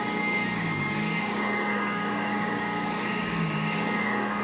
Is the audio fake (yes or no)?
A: yes